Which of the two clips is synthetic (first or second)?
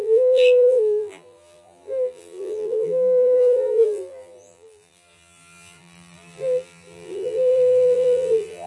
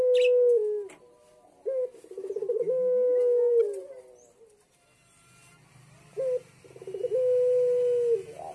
first